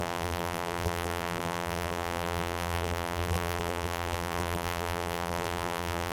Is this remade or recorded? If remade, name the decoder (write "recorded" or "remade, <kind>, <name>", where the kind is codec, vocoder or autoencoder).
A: remade, vocoder, BigVGAN v2